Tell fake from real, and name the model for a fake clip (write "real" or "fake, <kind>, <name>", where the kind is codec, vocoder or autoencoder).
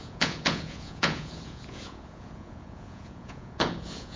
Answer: fake, vocoder, Vocos